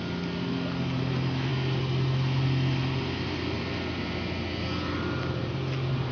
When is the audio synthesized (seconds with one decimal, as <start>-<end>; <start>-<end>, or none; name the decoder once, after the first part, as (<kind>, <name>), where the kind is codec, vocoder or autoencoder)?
none